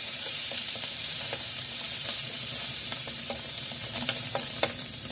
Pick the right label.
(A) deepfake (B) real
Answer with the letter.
A